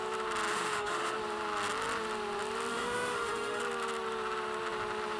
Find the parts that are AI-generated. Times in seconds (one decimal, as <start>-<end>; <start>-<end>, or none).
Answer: 0.5-1.2; 2.7-3.6